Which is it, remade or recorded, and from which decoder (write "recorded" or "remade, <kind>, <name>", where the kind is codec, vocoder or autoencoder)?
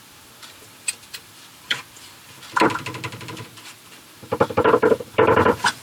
remade, vocoder, BigVGAN v2